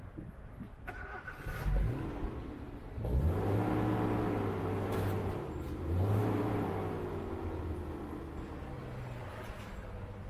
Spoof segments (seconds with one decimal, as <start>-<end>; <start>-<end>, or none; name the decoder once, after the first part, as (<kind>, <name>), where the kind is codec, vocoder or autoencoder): 5.2-6.7 (vocoder, BigVGAN v2)